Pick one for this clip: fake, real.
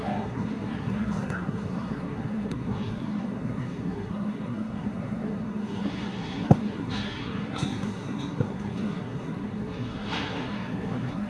fake